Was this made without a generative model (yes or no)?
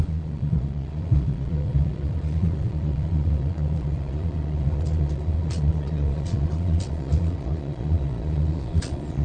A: no